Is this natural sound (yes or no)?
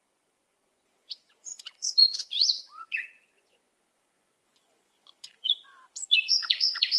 no